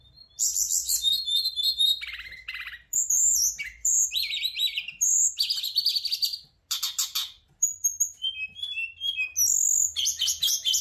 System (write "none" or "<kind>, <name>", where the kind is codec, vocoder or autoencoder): none